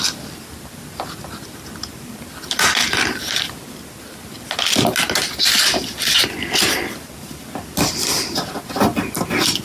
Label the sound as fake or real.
real